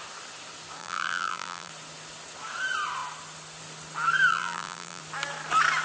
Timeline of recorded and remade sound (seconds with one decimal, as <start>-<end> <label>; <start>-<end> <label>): 0.0-0.8 recorded; 0.8-1.7 remade; 1.7-4.3 recorded; 4.3-5.0 remade; 5.0-5.8 recorded

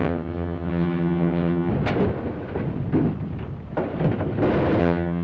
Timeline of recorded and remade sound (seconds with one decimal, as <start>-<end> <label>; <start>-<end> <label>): 0.0-1.7 remade; 1.7-4.8 recorded; 4.8-5.2 remade

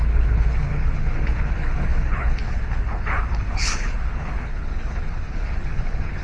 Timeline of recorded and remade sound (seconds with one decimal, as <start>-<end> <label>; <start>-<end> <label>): 0.0-6.2 remade

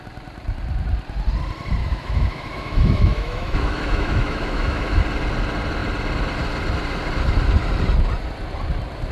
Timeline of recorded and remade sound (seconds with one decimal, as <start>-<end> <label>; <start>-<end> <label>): 0.0-1.8 recorded; 1.8-5.0 remade; 5.0-9.1 recorded

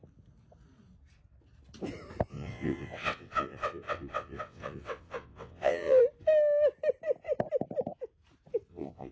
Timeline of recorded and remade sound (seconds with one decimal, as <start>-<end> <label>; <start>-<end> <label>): 0.0-2.3 recorded; 2.3-6.0 remade; 6.0-8.7 recorded; 8.7-9.1 remade